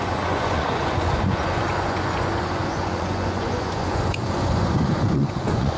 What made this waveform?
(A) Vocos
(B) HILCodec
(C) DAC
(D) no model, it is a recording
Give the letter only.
A